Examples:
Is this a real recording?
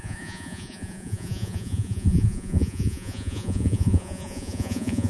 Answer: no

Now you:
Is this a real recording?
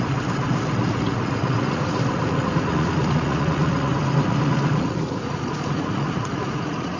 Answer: no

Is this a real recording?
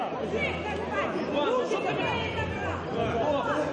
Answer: yes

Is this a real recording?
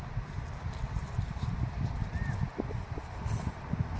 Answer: yes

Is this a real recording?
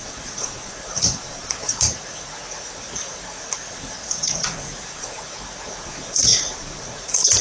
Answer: no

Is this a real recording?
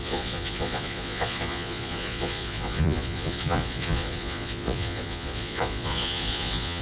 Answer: no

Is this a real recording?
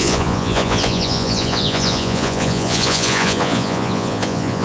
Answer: no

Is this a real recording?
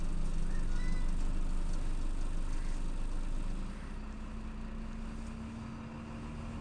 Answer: yes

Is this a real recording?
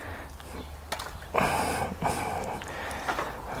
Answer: yes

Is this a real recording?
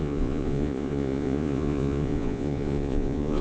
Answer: no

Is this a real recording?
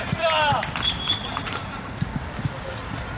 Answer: yes